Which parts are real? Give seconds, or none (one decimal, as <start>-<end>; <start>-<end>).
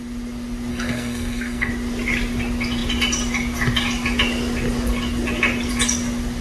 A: 0.0-0.7; 1.7-6.4